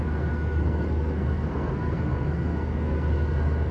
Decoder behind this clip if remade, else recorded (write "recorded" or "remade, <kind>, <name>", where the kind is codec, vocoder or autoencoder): remade, codec, SNAC